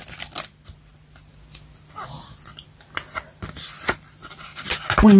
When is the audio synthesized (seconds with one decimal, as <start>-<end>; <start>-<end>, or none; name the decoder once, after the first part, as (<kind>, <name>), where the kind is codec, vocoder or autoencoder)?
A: none